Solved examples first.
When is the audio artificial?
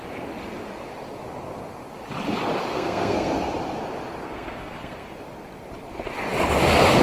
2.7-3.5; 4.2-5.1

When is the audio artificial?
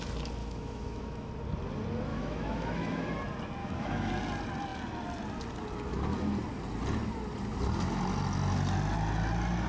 0.4-1.3; 2.1-3.1; 3.6-4.1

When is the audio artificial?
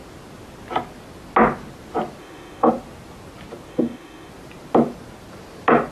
2.2-2.7; 3.7-4.3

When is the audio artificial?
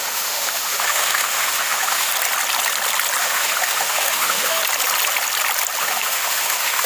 0.0-2.1; 3.2-4.6; 5.8-6.9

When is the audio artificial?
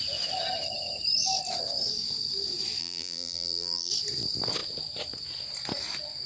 2.8-3.9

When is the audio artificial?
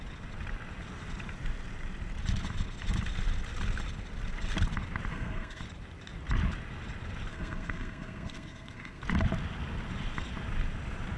5.1-5.6; 7.3-9.0